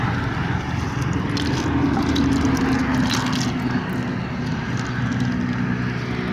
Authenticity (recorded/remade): recorded